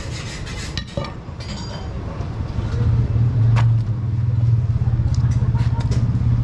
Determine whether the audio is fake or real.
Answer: real